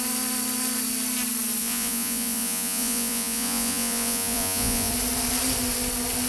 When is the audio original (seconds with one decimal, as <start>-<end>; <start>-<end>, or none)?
0.0-1.6; 4.9-6.3